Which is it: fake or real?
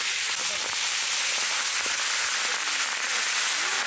real